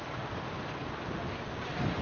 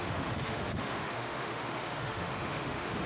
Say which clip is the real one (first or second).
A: first